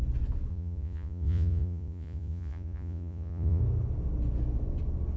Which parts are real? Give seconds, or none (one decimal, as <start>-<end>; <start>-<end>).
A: 0.0-0.5; 3.6-5.2